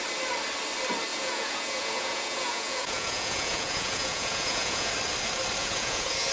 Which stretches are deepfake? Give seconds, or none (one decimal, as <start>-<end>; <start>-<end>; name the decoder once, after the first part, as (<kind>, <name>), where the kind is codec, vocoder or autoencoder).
1.1-4.9 (vocoder, Vocos); 5.6-6.3